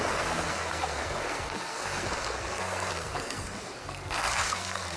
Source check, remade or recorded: remade